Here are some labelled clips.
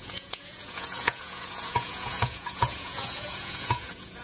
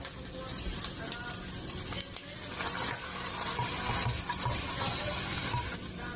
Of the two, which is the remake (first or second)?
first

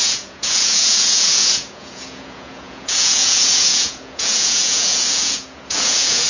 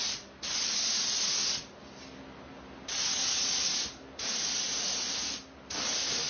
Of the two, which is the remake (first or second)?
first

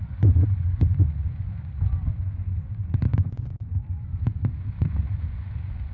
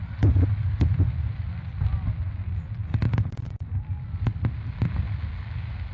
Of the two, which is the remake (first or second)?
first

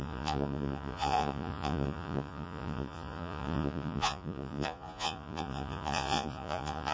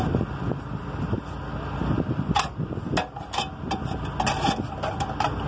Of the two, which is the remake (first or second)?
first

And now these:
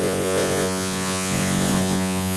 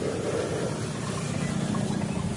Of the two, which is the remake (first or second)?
first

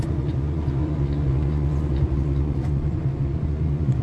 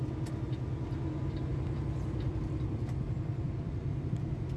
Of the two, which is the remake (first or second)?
first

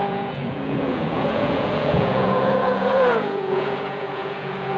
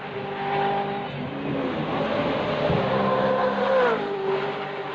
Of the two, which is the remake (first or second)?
first